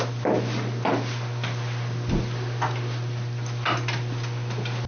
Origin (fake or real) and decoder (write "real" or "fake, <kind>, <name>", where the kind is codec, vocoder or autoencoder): real